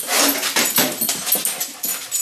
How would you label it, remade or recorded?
recorded